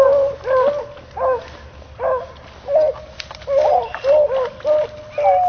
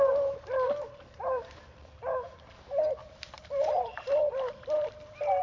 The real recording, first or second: first